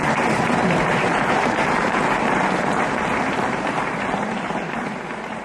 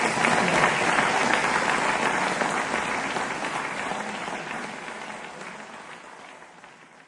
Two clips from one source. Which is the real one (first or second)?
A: second